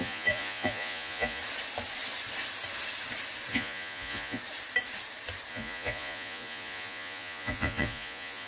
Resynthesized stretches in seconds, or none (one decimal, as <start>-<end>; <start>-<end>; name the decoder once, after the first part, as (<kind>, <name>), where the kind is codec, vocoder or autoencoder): 0.0-1.4 (vocoder, Vocos); 3.5-4.4; 5.5-8.5